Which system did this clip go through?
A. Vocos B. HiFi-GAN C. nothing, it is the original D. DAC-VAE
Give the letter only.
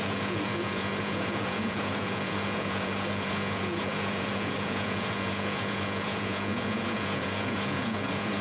A